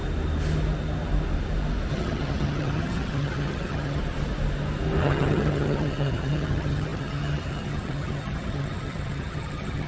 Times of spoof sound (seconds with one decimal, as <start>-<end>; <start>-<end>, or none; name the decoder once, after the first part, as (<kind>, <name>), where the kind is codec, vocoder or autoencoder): 1.9-4.0 (vocoder, HiFi-GAN); 5.0-9.9